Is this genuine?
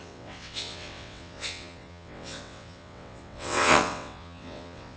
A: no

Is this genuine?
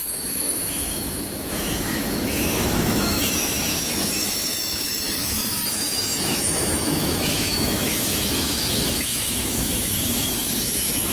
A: no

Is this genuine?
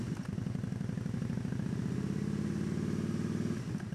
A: yes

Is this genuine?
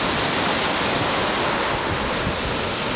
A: yes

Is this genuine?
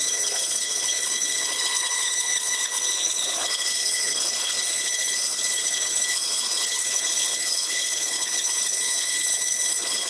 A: no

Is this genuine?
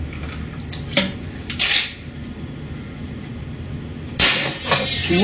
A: yes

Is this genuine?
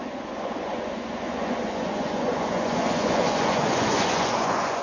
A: no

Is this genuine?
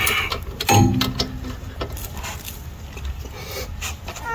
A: yes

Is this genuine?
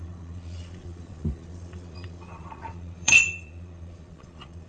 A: no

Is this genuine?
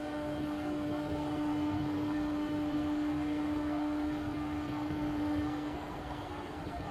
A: no